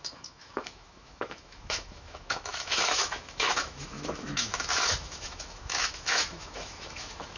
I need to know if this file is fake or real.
fake